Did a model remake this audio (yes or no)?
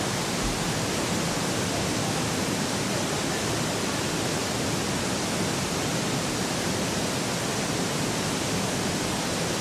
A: no